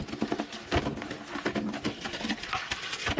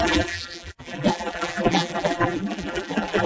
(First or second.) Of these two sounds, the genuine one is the first